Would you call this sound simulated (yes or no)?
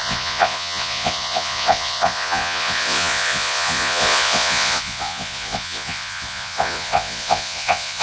yes